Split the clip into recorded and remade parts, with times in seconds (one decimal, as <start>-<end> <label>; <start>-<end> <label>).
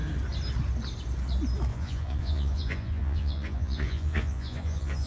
0.0-1.7 recorded; 1.7-5.1 remade